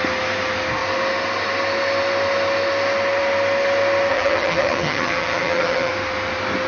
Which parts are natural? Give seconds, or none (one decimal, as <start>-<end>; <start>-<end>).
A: 0.0-4.1; 5.9-6.7